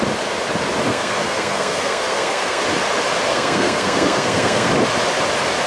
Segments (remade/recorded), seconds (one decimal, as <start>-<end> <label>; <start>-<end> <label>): 0.0-0.9 recorded; 0.9-2.6 remade; 2.6-3.3 recorded; 3.3-4.7 remade; 4.7-5.7 recorded